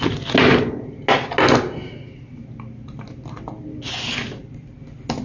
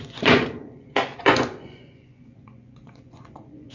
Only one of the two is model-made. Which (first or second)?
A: second